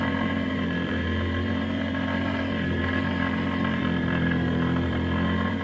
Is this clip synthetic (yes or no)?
yes